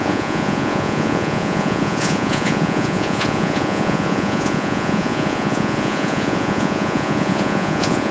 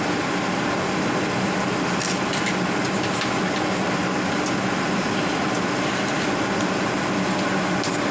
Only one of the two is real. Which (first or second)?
second